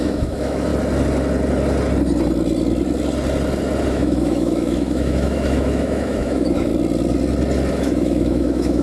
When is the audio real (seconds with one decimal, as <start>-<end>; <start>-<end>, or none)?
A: 0.7-3.9; 6.7-7.7